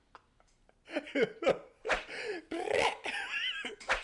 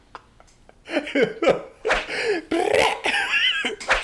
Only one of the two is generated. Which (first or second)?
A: first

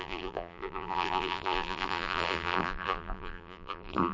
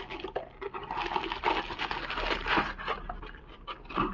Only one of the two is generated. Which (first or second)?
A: first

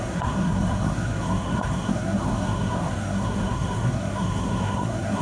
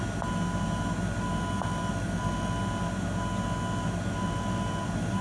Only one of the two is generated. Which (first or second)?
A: first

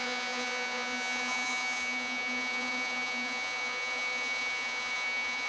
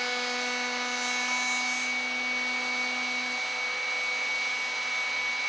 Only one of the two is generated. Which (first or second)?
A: first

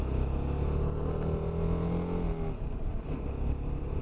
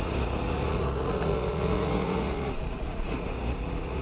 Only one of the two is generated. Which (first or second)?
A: second